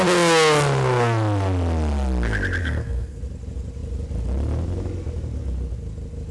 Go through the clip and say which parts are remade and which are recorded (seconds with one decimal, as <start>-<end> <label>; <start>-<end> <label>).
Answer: 0.0-2.6 recorded; 2.6-3.2 remade; 3.2-6.3 recorded